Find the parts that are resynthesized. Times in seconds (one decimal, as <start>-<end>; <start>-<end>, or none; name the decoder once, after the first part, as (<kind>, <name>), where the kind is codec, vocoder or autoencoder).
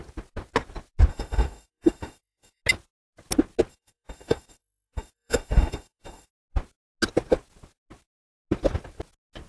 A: 1.1-2.6 (autoencoder, DAC-VAE); 3.7-6.3